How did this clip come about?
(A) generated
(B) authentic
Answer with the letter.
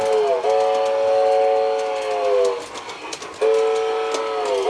B